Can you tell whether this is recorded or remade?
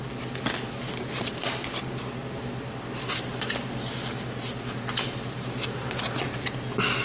recorded